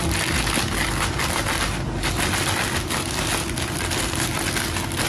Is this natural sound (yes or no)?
yes